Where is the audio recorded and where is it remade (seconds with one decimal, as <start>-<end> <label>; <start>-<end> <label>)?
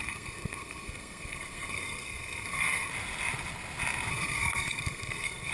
0.0-2.9 remade; 2.9-4.1 recorded; 4.1-5.5 remade